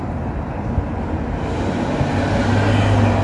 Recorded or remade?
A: recorded